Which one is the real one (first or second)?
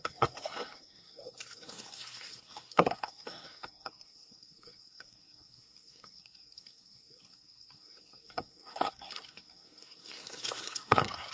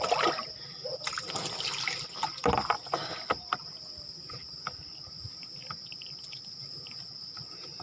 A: second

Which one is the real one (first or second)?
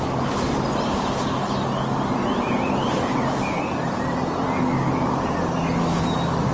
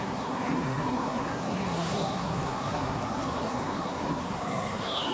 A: first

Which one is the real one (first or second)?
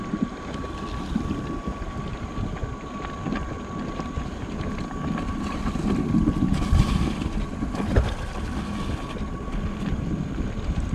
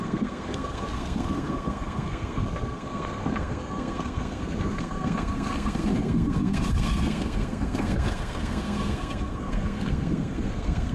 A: first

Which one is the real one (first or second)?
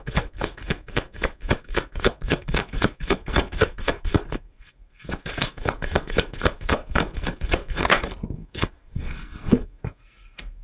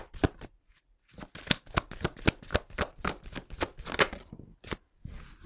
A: second